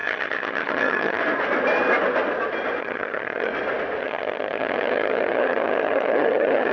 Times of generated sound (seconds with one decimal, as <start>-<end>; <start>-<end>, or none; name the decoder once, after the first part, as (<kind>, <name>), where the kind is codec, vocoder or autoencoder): 0.0-1.2 (vocoder, HiFi-GAN); 2.8-3.5; 4.0-6.7